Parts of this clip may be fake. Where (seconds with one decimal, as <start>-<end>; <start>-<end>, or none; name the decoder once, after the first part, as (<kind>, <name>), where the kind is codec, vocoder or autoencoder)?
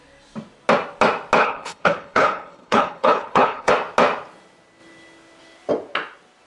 1.4-3.7 (codec, HILCodec)